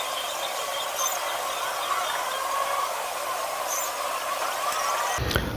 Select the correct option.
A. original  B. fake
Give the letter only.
B